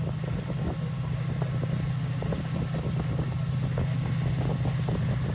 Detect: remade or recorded recorded